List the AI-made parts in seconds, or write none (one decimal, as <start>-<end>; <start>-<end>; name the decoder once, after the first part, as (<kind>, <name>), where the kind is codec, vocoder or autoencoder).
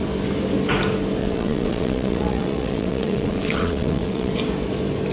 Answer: 1.2-4.3 (vocoder, WaveNeXt)